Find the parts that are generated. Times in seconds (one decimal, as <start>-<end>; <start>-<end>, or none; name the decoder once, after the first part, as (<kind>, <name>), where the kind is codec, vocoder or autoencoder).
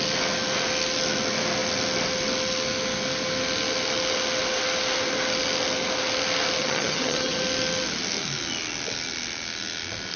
6.6-7.4 (vocoder, HiFi-GAN)